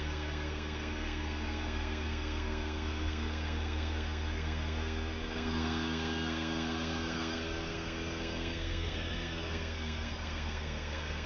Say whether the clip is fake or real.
fake